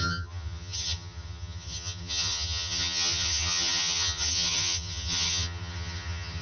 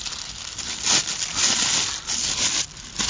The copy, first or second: first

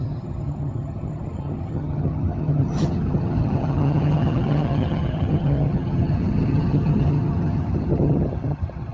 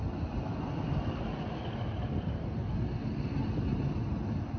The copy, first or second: first